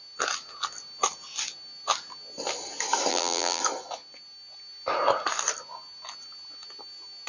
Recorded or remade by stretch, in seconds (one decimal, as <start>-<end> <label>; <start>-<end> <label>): 0.0-3.1 recorded; 3.1-3.6 remade; 3.6-7.3 recorded